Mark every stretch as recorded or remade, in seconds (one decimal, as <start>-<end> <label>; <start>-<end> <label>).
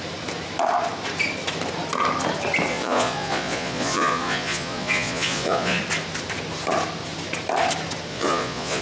0.0-2.7 recorded; 2.7-5.8 remade; 5.8-8.1 recorded; 8.1-8.8 remade